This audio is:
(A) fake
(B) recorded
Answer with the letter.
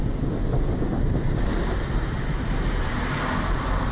A